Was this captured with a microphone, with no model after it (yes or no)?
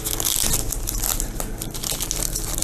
yes